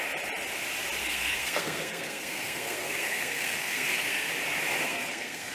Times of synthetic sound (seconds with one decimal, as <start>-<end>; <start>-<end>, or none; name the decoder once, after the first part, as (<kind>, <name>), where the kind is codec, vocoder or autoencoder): 1.0-4.3 (codec, SNAC); 4.8-5.5